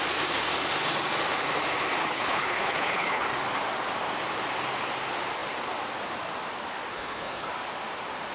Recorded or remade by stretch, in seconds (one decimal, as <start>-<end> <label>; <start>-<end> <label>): 0.0-2.0 recorded; 2.0-3.2 remade; 3.2-6.9 recorded; 6.9-7.5 remade; 7.5-8.3 recorded